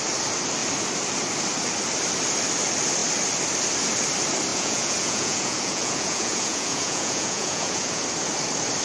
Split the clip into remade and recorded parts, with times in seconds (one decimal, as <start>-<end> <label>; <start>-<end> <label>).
0.0-4.5 recorded; 4.5-8.0 remade; 8.0-8.8 recorded